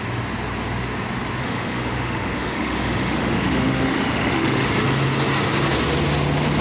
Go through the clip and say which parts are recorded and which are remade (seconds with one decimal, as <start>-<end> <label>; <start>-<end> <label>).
0.0-1.4 recorded; 1.4-4.7 remade; 4.7-6.6 recorded